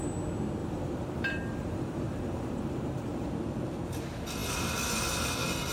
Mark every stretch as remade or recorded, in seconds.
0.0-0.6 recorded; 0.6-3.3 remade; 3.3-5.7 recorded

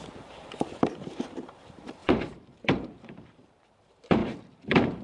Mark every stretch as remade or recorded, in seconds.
0.0-5.0 remade

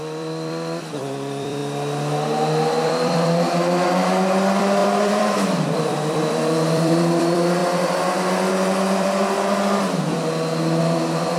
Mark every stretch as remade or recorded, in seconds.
0.0-1.6 remade; 1.6-2.8 recorded; 2.8-7.6 remade; 7.6-8.5 recorded; 8.5-9.2 remade; 9.2-10.8 recorded; 10.8-11.4 remade

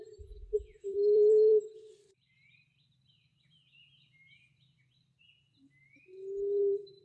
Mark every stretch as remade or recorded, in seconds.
0.0-1.5 remade; 1.5-2.1 recorded; 2.1-3.3 remade; 3.3-6.6 recorded; 6.6-7.0 remade

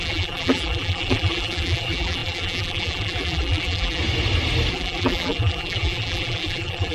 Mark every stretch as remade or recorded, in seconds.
0.0-4.0 remade; 4.0-4.7 recorded; 4.7-6.9 remade

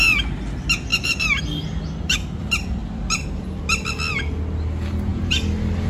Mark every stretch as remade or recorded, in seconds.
0.0-0.9 recorded; 0.9-1.4 remade; 1.4-5.1 recorded; 5.1-5.9 remade